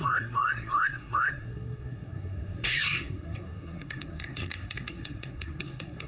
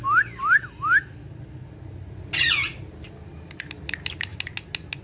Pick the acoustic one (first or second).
second